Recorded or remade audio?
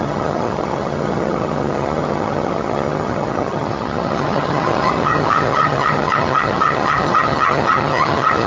remade